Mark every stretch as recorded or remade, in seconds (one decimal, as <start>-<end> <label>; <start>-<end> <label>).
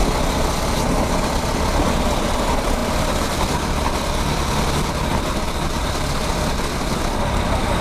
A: 0.0-1.4 recorded; 1.4-7.8 remade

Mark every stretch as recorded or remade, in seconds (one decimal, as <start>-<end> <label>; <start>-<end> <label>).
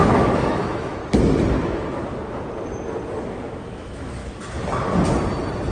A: 0.0-1.0 remade; 1.0-1.5 recorded; 1.5-2.0 remade; 2.0-3.3 recorded; 3.3-4.2 remade; 4.2-5.7 recorded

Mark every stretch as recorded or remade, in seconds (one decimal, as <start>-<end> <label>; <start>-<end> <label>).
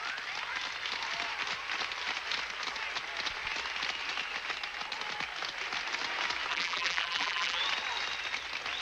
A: 0.0-6.5 recorded; 6.5-7.6 remade; 7.6-8.8 recorded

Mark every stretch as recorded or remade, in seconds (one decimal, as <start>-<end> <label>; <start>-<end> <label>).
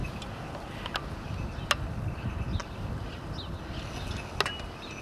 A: 0.0-5.0 recorded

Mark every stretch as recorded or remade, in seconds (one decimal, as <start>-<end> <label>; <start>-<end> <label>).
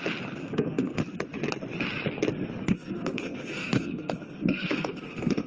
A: 0.0-0.4 recorded; 0.4-1.0 remade; 1.0-2.6 recorded; 2.6-5.5 remade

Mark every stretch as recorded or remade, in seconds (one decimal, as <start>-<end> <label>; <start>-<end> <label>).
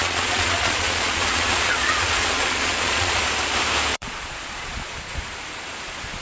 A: 0.0-3.2 remade; 3.2-3.9 recorded; 3.9-5.2 remade; 5.2-6.2 recorded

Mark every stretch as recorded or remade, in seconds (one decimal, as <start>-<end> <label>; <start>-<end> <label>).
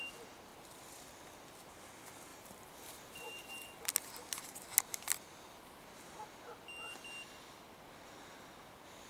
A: 0.0-2.3 recorded; 2.3-3.5 remade; 3.5-9.1 recorded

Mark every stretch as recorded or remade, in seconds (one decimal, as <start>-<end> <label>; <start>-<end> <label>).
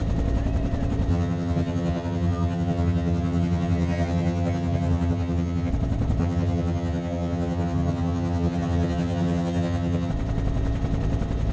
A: 0.0-1.1 recorded; 1.1-5.7 remade; 5.7-6.2 recorded; 6.2-10.1 remade; 10.1-11.5 recorded